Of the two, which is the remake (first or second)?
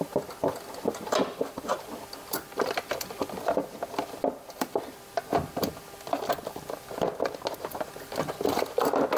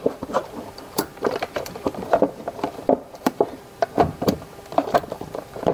second